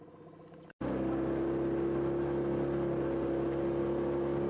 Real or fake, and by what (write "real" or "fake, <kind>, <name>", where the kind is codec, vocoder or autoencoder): real